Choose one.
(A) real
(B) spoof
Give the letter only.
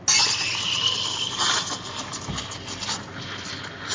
A